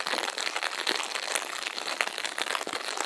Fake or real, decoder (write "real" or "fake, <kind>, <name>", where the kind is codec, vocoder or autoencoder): real